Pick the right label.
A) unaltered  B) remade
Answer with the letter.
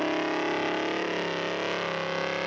A